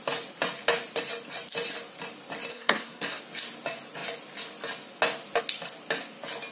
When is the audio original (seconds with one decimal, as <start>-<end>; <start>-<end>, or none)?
0.0-2.5; 3.2-6.5

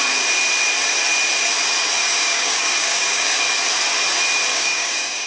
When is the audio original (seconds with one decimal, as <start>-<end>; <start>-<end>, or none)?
0.0-2.0; 3.4-4.5

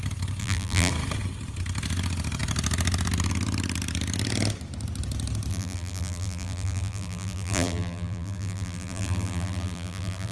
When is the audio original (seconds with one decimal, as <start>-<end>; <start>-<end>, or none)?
0.0-0.4; 0.9-5.5